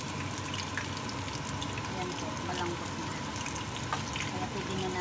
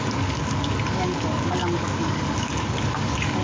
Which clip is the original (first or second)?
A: first